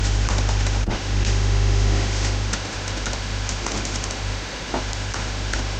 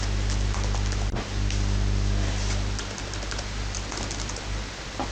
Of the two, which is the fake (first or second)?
first